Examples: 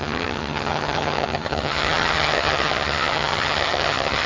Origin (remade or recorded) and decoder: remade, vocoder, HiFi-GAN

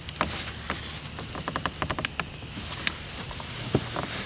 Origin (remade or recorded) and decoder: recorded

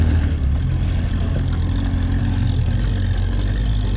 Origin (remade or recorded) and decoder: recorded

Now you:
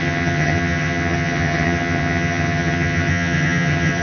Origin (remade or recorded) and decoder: remade, vocoder, HiFi-GAN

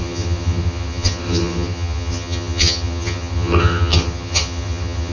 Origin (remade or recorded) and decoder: remade, vocoder, HiFi-GAN